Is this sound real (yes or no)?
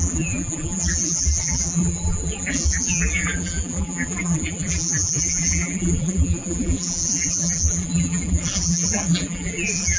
no